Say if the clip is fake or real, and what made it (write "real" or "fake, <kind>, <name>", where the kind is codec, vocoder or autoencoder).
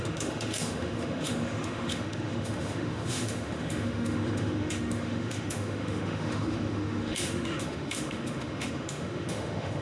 fake, autoencoder, DAC-VAE